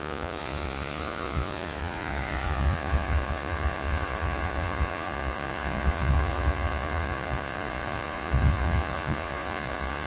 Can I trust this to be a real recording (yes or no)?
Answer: no